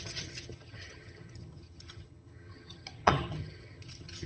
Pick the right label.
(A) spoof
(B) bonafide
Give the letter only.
A